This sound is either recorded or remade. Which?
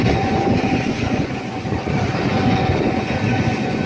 remade